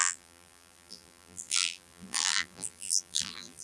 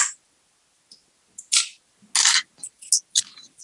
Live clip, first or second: second